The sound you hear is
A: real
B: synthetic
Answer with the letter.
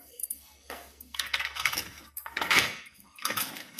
B